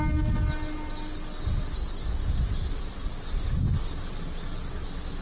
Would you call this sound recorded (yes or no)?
yes